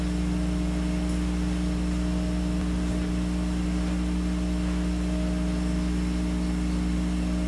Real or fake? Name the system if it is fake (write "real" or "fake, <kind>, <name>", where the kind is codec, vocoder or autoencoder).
real